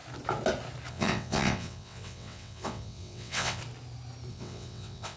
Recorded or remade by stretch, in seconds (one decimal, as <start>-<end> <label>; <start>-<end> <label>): 0.0-0.9 recorded; 0.9-3.6 remade; 3.6-4.3 recorded; 4.3-5.2 remade